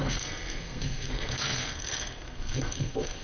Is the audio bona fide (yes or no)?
no